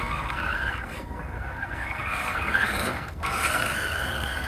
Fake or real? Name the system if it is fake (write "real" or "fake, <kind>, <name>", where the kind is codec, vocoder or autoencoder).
fake, codec, SNAC